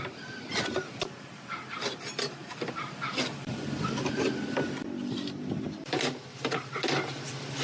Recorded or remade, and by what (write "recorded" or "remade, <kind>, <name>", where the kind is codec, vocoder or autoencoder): recorded